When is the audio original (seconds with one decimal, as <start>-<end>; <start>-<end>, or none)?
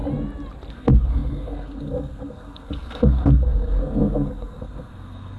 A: 0.0-0.7